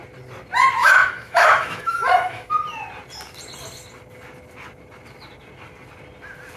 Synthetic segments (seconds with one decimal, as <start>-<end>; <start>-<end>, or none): 0.8-2.5